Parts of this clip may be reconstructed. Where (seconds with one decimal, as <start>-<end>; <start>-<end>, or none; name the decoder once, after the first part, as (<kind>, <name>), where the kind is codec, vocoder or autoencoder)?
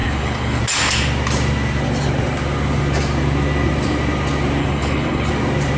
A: 0.0-0.6 (codec, HILCodec); 4.6-5.3